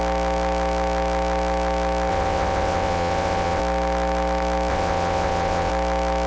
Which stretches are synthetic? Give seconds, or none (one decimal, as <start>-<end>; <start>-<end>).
2.1-3.6; 4.7-5.7